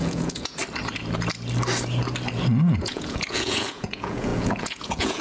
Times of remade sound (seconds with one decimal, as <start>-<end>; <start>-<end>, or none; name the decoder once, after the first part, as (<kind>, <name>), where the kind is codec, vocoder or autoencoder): 0.0-0.6 (vocoder, Vocos); 2.8-5.2